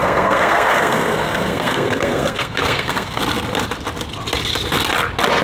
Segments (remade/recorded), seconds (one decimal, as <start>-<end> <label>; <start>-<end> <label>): 0.0-3.2 remade; 3.2-5.4 recorded